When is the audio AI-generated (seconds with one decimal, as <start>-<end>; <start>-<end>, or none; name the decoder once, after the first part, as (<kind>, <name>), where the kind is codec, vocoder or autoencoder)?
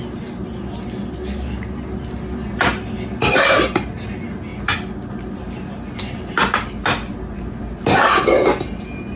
none